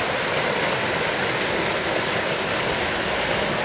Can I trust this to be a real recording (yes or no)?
yes